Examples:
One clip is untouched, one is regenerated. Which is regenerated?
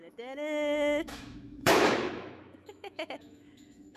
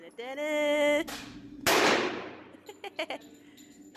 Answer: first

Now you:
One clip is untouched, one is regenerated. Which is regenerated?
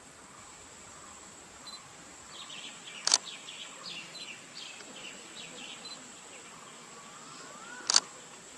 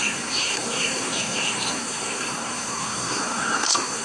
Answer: second